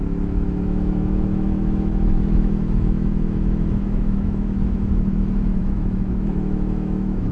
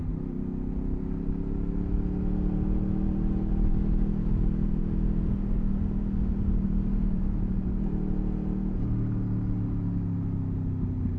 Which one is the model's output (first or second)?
first